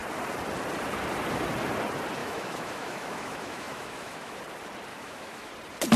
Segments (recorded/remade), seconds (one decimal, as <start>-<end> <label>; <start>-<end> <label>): 0.0-2.2 recorded; 2.2-4.4 remade; 4.4-4.9 recorded; 4.9-5.5 remade; 5.5-6.0 recorded